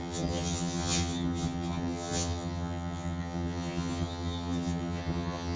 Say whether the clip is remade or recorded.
remade